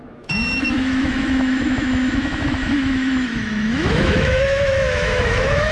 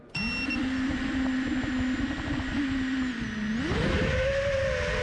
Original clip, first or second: second